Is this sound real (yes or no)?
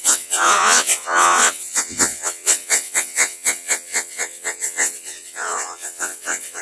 no